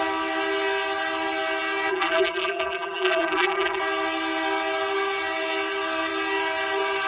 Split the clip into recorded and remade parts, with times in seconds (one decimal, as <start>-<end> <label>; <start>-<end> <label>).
0.0-1.9 recorded; 1.9-3.8 remade; 3.8-7.1 recorded